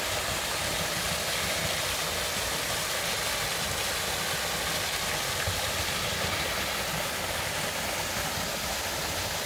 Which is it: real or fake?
real